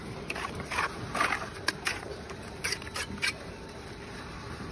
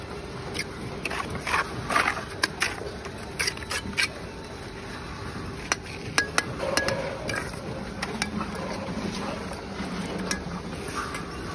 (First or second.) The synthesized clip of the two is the first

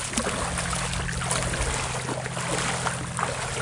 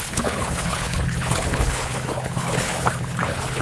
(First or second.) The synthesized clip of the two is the second